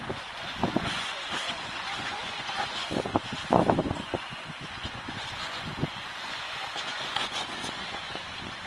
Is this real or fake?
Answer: fake